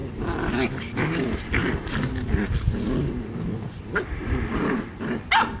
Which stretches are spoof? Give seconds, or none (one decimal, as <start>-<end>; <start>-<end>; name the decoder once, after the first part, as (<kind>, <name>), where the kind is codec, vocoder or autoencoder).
none